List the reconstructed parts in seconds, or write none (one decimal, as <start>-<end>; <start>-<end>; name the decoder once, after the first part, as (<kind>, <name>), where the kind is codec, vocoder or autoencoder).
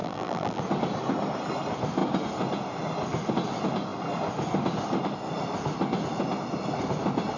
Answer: 0.0-0.6 (vocoder, BigVGAN v2)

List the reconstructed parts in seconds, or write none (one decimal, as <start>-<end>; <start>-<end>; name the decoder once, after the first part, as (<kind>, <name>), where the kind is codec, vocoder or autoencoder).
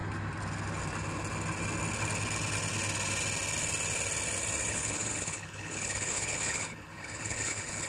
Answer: 4.7-7.9 (codec, HILCodec)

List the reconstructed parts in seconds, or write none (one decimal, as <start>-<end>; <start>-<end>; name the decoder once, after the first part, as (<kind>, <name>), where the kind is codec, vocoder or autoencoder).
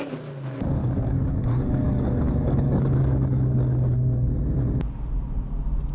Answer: 0.8-4.3 (codec, DAC)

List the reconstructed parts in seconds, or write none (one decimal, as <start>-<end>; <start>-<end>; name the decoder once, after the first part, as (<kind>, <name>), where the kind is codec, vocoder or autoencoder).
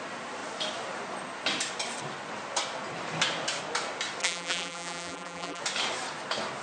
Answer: 4.2-5.6 (vocoder, BigVGAN v2)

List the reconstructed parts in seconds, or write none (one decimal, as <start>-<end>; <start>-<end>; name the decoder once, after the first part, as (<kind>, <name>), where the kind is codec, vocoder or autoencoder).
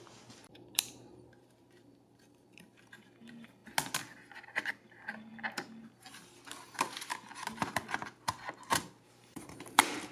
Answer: 0.0-3.6 (vocoder, BigVGAN v2); 4.7-5.3; 6.5-7.1; 8.7-10.1